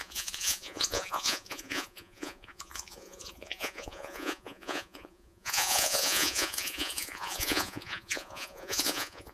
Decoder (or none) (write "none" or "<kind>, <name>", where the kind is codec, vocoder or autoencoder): vocoder, Vocos